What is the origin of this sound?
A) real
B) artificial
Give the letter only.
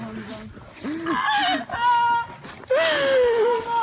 A